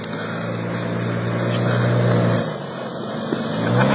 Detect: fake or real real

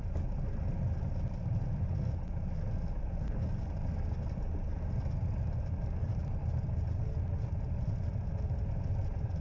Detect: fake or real real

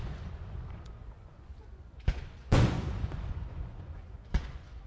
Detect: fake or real fake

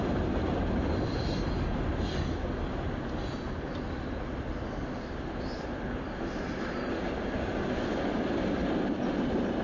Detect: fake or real real